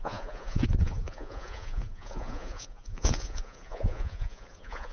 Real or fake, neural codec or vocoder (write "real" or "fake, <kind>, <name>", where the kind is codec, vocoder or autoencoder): fake, vocoder, Vocos